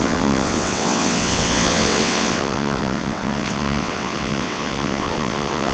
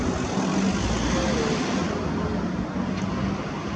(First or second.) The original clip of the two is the second